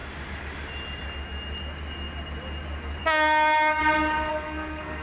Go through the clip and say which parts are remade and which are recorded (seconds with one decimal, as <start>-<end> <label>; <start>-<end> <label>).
0.0-3.0 recorded; 3.0-3.8 remade; 3.8-4.3 recorded; 4.3-5.0 remade